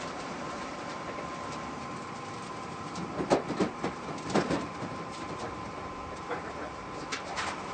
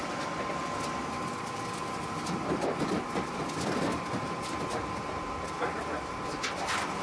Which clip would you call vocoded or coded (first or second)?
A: first